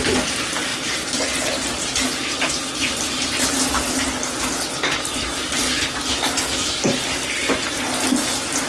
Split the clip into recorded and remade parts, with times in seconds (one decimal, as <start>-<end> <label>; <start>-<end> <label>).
0.0-0.7 recorded; 0.7-4.0 remade; 4.0-5.1 recorded; 5.1-5.8 remade; 5.8-8.7 recorded